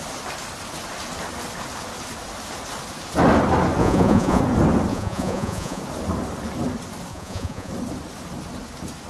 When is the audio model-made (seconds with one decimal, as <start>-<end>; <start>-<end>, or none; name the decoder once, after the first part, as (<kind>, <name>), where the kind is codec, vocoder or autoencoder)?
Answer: 3.8-4.4 (vocoder, Vocos); 4.9-5.8; 7.1-7.7